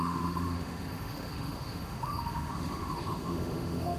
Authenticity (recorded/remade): remade